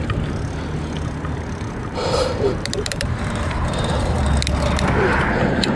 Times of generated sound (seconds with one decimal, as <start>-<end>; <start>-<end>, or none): 1.8-4.2